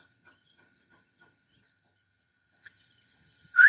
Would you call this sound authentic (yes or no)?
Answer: no